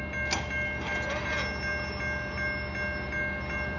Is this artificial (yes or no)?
no